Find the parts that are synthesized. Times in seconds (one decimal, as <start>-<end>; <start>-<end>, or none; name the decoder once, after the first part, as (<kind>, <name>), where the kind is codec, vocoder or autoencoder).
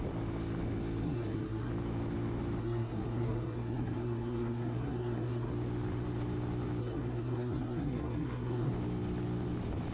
1.0-1.7 (codec, SNAC); 2.6-5.5; 6.8-8.7